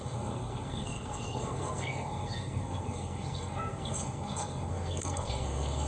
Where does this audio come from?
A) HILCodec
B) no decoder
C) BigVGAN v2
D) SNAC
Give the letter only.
D